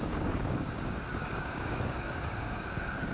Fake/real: fake